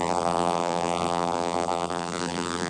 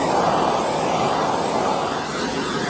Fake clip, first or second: first